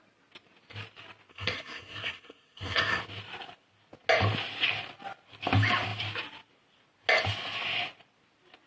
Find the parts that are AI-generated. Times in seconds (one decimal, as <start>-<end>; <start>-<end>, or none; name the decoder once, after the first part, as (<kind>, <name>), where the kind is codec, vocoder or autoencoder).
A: 1.3-3.0 (codec, SNAC)